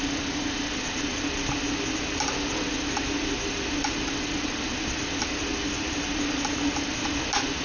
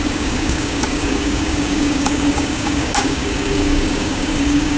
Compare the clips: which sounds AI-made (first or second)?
second